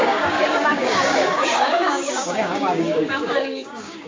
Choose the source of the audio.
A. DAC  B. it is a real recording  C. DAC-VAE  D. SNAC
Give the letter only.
A